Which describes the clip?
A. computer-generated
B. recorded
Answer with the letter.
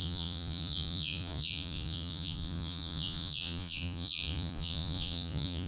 A